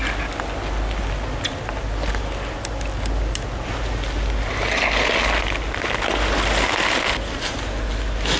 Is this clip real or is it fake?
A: real